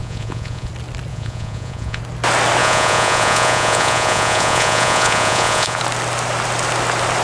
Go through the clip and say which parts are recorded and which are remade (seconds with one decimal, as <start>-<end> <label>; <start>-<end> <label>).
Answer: 0.0-0.7 remade; 0.7-1.1 recorded; 1.1-2.0 remade; 2.0-2.6 recorded; 2.6-5.8 remade; 5.8-7.2 recorded